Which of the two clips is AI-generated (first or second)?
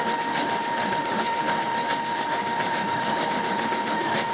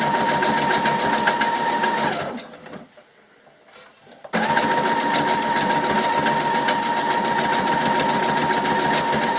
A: first